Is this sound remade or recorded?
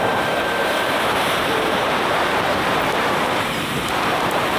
remade